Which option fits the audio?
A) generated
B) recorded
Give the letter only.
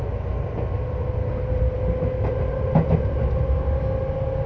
B